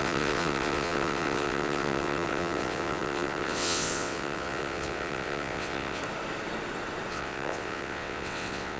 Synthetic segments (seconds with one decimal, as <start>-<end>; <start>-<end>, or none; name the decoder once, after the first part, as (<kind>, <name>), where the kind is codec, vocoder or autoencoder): 0.0-6.0 (vocoder, WaveNeXt); 7.1-8.8